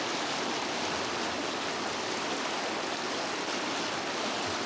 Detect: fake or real real